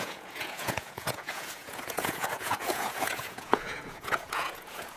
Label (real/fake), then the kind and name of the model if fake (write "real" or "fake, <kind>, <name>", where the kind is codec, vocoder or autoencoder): fake, vocoder, Vocos